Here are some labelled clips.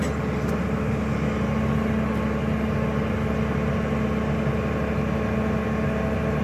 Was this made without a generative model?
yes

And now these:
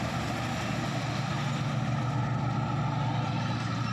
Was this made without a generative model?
yes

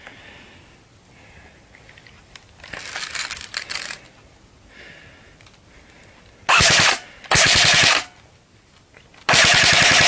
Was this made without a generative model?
yes